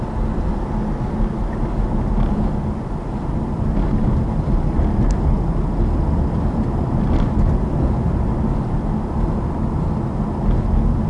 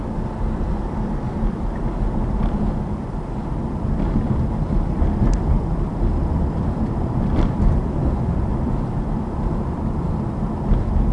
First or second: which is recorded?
first